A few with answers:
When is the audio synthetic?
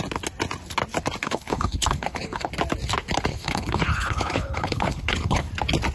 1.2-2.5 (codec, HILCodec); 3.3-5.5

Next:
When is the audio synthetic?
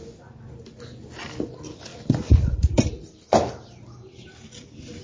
none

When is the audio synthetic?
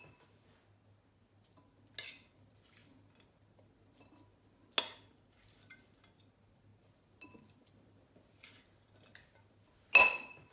none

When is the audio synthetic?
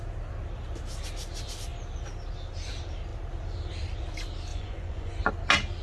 4.5-5.3 (vocoder, Vocos)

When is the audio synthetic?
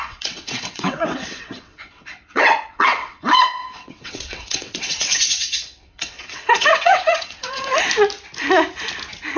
0.0-7.7 (vocoder, WaveNeXt)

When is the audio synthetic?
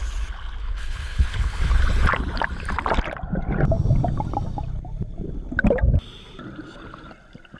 0.6-1.7 (codec, HILCodec)